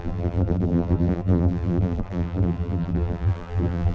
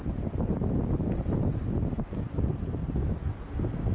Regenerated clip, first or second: first